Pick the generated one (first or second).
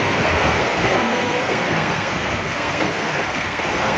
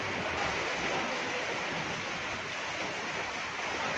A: first